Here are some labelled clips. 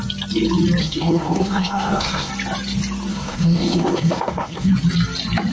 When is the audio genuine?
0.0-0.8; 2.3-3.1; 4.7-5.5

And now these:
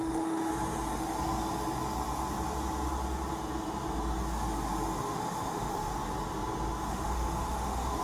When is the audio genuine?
0.5-5.0; 5.9-6.9

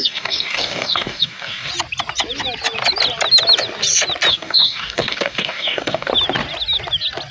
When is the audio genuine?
1.7-4.3; 6.1-7.3

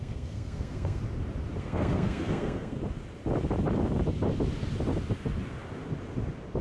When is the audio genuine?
1.0-1.6; 2.8-6.6

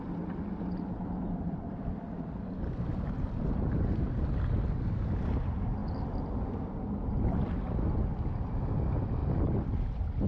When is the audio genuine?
0.0-10.3